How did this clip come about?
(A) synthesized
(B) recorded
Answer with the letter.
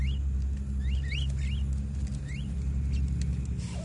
B